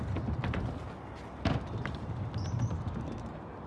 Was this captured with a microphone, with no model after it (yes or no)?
yes